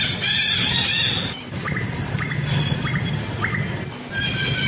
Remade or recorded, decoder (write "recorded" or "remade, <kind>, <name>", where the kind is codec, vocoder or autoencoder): recorded